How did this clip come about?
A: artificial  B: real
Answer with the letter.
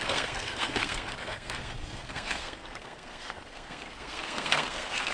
A